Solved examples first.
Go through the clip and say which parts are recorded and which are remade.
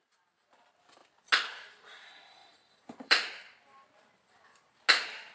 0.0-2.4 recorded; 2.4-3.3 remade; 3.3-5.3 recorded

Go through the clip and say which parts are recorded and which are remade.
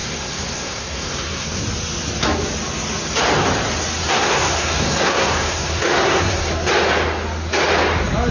0.0-1.6 remade; 1.6-4.0 recorded; 4.0-6.7 remade; 6.7-8.3 recorded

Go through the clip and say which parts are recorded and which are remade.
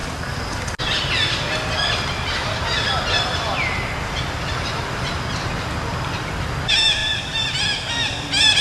0.0-8.6 recorded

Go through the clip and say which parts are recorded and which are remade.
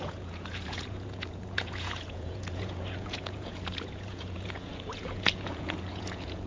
0.0-6.5 remade